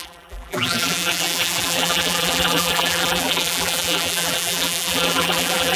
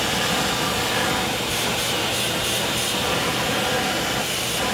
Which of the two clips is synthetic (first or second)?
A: first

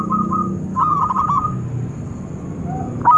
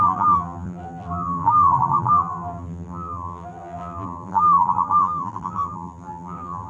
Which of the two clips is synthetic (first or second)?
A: second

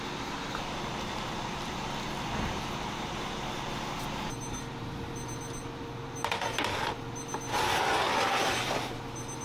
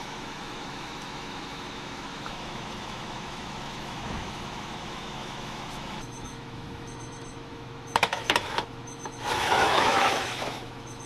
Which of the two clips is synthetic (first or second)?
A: second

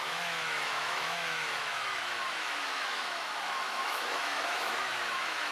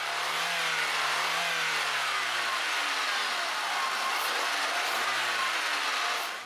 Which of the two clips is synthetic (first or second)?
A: first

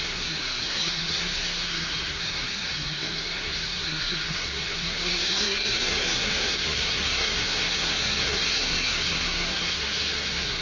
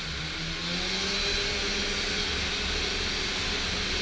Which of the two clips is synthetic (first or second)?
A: first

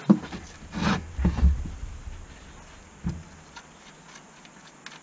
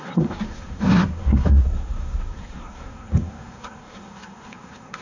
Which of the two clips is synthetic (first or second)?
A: second